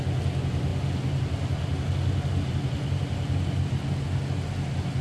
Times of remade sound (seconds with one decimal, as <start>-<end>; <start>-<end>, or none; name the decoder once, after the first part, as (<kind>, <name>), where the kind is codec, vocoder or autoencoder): none